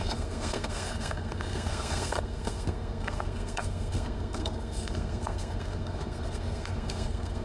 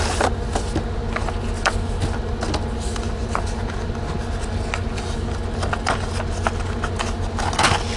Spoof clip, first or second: first